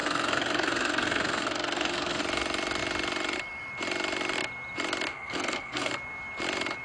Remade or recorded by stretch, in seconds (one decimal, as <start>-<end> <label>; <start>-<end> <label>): 0.0-2.2 remade; 2.2-5.1 recorded; 5.1-5.9 remade; 5.9-6.8 recorded

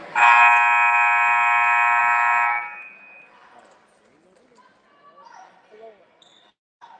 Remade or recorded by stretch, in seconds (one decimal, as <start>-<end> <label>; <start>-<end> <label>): 0.0-7.0 recorded